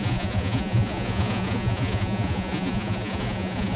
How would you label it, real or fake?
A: fake